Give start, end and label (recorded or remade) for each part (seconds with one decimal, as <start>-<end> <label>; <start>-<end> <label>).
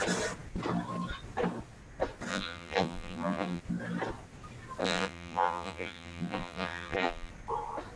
0.0-2.3 recorded; 2.3-3.6 remade; 3.6-4.8 recorded; 4.8-7.3 remade; 7.3-8.0 recorded